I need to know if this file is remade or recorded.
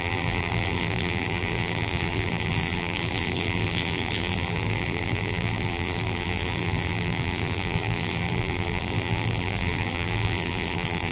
remade